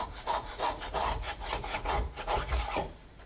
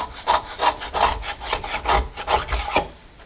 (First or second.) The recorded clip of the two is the second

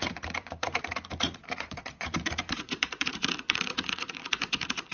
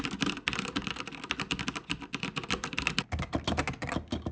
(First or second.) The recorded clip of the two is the second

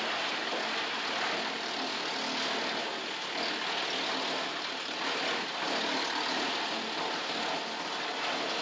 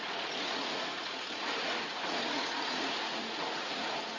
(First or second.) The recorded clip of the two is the first